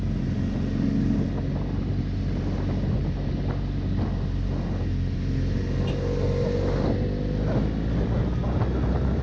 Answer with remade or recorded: recorded